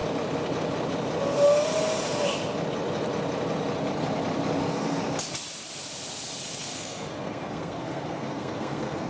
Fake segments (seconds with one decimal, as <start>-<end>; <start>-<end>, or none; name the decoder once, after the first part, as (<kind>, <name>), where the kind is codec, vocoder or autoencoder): 4.6-5.0 (codec, SNAC); 6.6-9.1